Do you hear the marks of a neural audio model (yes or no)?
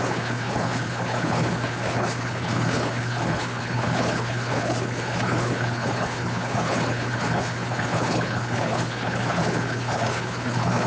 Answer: yes